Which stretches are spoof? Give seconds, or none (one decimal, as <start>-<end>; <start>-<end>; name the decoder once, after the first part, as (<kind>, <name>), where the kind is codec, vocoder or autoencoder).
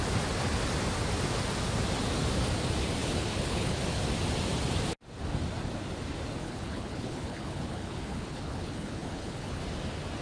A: 3.0-3.8 (codec, HILCodec); 6.4-9.6